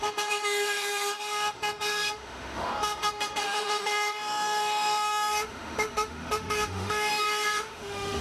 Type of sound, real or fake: fake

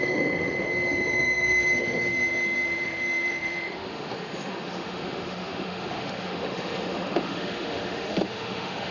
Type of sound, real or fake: fake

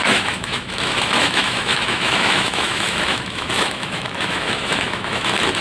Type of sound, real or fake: fake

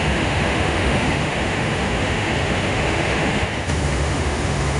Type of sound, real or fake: fake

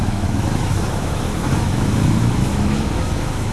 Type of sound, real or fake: fake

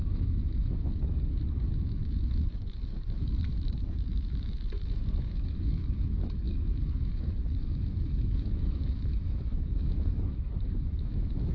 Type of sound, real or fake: fake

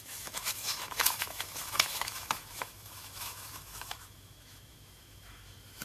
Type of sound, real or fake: fake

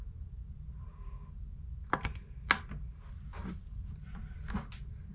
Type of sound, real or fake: real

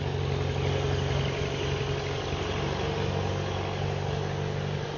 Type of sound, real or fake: real